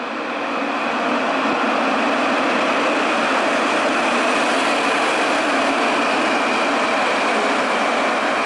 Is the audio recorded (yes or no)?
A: yes